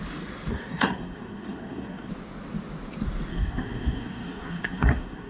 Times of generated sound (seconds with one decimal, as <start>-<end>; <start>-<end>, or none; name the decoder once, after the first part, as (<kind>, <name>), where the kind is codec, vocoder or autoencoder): 0.5-2.1 (codec, SNAC); 3.3-5.3